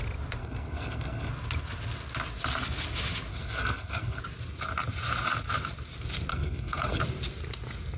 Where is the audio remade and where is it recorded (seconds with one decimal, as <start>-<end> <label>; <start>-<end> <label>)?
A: 0.0-0.4 recorded; 0.4-1.3 remade; 1.3-3.3 recorded; 3.3-4.2 remade; 4.2-6.3 recorded; 6.3-7.0 remade; 7.0-8.0 recorded